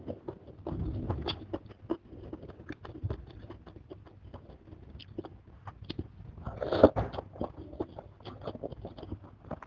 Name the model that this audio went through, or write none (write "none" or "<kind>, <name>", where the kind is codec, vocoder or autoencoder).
none